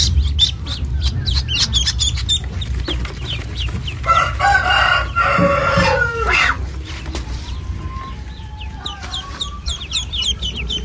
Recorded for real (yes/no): yes